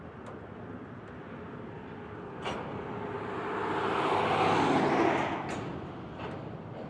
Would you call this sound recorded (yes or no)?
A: yes